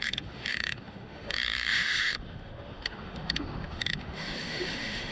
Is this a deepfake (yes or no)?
yes